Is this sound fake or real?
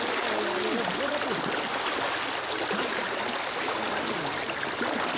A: real